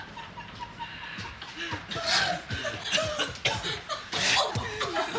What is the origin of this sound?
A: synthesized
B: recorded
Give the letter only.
B